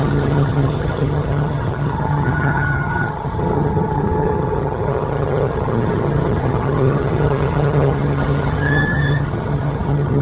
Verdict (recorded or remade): remade